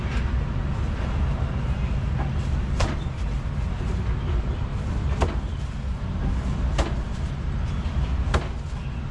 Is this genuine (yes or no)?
yes